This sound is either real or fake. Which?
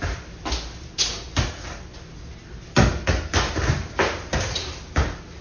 real